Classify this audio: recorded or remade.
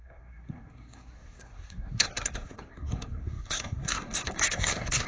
remade